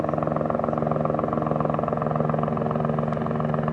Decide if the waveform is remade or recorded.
recorded